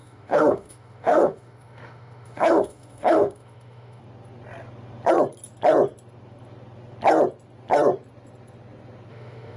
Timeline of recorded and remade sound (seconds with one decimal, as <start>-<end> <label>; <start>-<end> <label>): 0.0-4.0 remade; 4.0-9.1 recorded; 9.1-9.6 remade